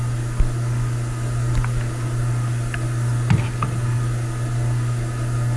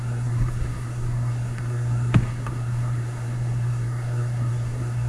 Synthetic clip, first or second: second